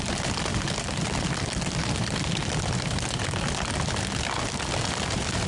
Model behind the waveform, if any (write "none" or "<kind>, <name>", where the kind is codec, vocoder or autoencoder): none